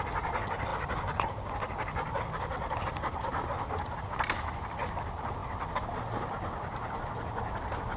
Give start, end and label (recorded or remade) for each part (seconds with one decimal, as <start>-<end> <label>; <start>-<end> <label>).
0.0-8.0 recorded